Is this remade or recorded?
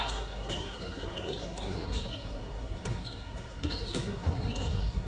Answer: remade